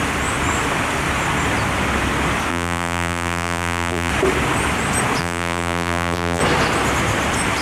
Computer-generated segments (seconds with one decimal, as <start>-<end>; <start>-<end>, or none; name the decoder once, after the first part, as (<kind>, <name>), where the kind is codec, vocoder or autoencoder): 2.5-4.1 (vocoder, BigVGAN v2); 5.2-6.4